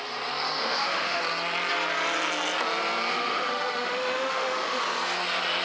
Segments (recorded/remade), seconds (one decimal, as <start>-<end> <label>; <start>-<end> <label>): 0.0-0.6 recorded; 0.6-1.2 remade; 1.2-3.1 recorded; 3.1-4.8 remade; 4.8-5.6 recorded